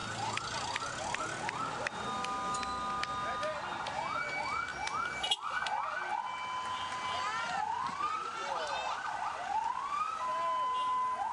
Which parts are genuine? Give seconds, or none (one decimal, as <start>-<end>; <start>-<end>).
0.0-11.3